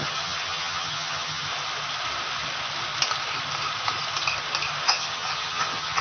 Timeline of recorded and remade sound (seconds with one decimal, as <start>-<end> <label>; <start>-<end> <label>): 0.0-1.5 remade; 1.5-4.8 recorded; 4.8-6.0 remade